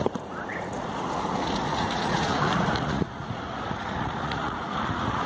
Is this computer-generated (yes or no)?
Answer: yes